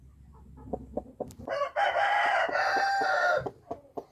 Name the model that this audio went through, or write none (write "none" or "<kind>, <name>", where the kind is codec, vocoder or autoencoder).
none